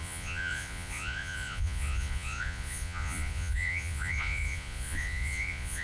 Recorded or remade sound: remade